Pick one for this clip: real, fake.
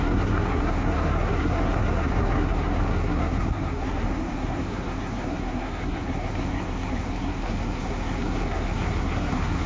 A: fake